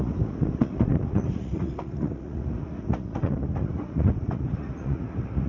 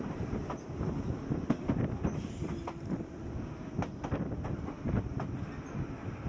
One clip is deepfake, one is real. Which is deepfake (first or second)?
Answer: first